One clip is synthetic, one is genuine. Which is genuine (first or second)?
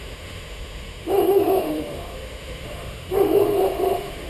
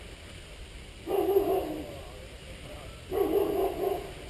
second